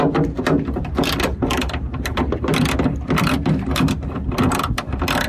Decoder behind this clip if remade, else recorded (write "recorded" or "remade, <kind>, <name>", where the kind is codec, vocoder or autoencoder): recorded